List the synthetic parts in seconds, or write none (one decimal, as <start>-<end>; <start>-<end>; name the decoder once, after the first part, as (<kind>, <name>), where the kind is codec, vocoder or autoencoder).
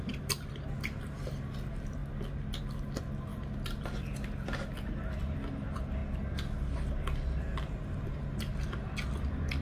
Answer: 0.0-2.0 (vocoder, BigVGAN v2); 2.6-6.0; 7.7-9.6